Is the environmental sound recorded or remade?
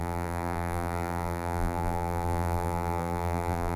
remade